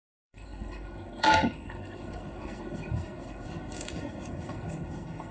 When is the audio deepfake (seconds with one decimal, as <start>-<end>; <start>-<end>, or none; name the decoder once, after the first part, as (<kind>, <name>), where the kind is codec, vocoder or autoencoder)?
0.0-5.3 (codec, SNAC)